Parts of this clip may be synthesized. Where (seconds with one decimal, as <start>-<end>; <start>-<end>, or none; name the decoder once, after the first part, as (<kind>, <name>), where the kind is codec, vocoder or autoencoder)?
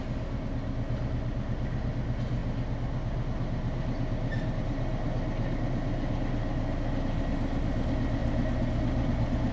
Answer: none